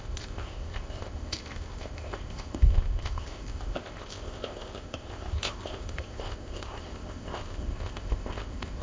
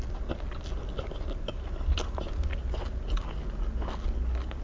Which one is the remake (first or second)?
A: first